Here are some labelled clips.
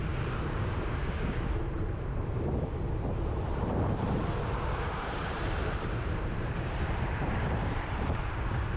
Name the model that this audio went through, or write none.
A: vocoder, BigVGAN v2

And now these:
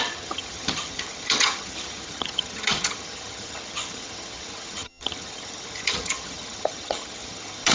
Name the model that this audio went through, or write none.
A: vocoder, HiFi-GAN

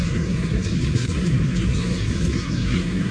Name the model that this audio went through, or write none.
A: codec, SNAC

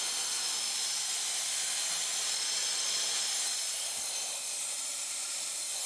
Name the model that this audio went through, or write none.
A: none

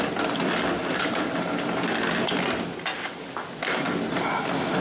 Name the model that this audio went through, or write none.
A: none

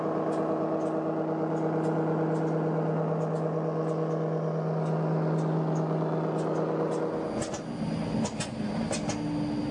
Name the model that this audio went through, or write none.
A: none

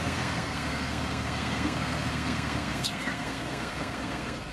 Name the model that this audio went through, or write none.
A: codec, SNAC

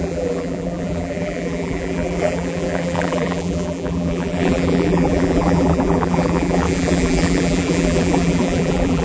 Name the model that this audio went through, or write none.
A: vocoder, BigVGAN v2